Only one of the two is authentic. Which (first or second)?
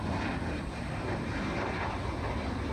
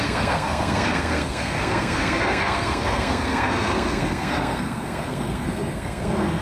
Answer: first